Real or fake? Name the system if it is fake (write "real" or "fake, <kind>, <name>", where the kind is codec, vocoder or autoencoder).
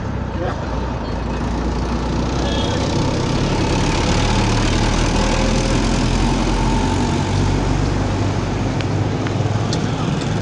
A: real